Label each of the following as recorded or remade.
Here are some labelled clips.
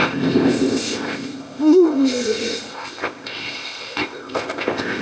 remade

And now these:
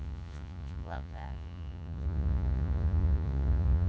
remade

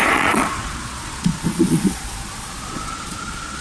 remade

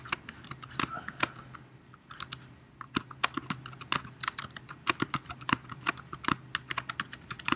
recorded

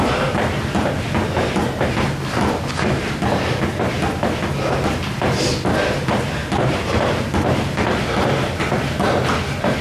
recorded